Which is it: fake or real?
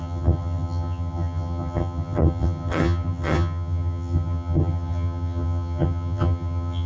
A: fake